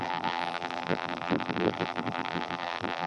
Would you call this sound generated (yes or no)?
yes